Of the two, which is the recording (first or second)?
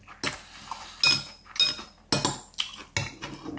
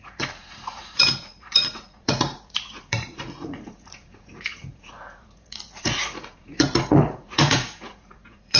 first